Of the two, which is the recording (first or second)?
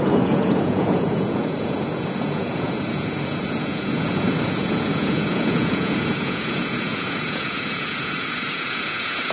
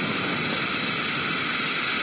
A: second